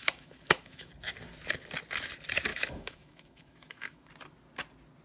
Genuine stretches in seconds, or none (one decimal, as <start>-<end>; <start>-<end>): 0.9-2.5; 4.1-5.0